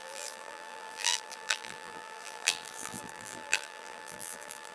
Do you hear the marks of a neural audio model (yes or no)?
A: yes